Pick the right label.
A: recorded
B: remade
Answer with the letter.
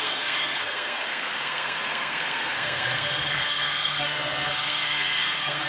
B